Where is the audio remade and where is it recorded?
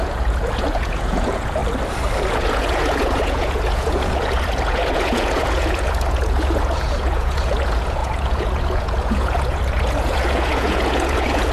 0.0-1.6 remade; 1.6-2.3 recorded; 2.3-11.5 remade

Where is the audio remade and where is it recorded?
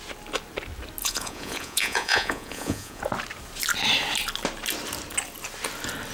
0.0-1.0 recorded; 1.0-3.0 remade; 3.0-6.1 recorded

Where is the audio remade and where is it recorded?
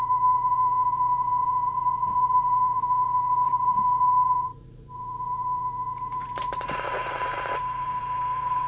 0.0-8.7 remade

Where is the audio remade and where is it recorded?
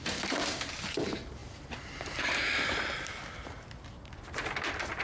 0.0-5.0 recorded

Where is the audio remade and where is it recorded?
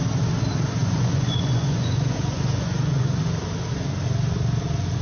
0.0-0.8 recorded; 0.8-3.2 remade; 3.2-5.0 recorded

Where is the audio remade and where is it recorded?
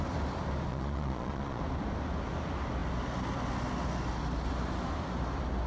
0.0-0.7 recorded; 0.7-1.6 remade; 1.6-5.7 recorded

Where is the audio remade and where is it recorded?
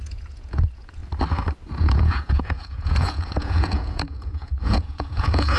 0.0-1.0 remade; 1.0-1.8 recorded; 1.8-5.6 remade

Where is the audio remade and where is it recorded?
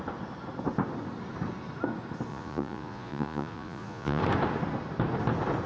0.0-2.3 recorded; 2.3-4.2 remade; 4.2-5.7 recorded